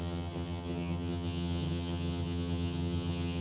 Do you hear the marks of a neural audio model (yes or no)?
yes